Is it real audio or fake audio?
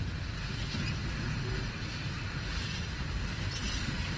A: real